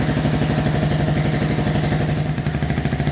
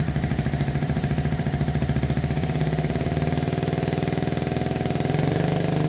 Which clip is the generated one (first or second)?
second